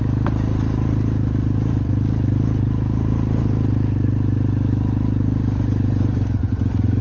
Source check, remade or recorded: recorded